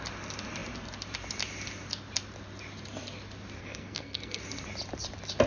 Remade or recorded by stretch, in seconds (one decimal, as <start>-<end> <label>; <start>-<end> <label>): 0.0-3.6 recorded; 3.6-4.4 remade; 4.4-5.5 recorded